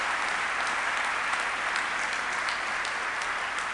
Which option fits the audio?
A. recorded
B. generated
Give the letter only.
A